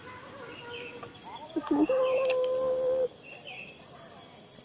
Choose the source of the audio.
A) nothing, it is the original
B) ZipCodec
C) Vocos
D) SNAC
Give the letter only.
A